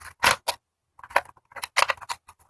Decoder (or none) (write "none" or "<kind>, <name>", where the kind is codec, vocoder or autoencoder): none